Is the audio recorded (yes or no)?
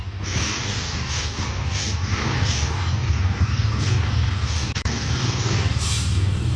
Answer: no